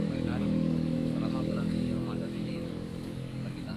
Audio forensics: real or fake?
fake